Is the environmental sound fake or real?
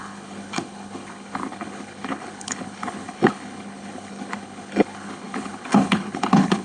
fake